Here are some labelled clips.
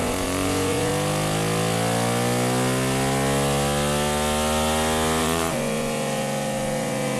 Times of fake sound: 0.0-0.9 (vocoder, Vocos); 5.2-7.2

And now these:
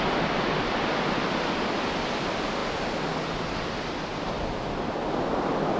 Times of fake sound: none

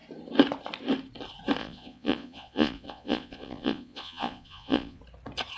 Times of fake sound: 1.6-5.0 (vocoder, Vocos)

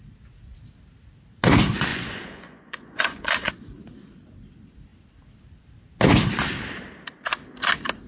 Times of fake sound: 1.9-3.5 (vocoder, Vocos)